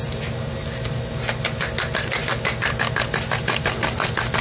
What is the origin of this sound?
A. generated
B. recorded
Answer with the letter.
B